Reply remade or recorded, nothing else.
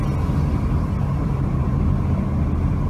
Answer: recorded